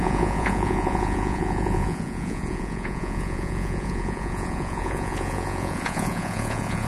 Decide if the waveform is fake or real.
fake